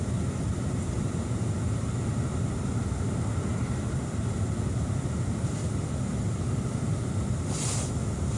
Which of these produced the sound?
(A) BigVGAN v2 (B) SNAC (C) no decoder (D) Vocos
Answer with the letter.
C